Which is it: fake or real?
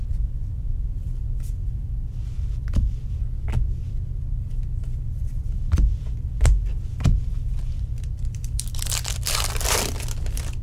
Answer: fake